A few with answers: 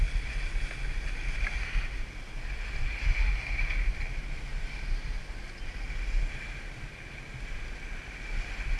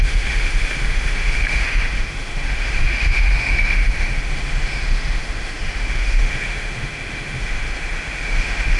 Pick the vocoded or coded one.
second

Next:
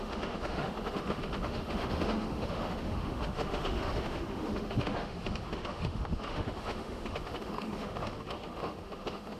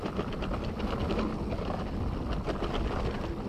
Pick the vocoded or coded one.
first